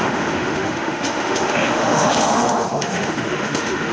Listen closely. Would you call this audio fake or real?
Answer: fake